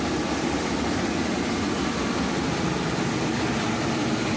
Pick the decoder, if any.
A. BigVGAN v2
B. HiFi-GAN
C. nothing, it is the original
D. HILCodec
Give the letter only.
C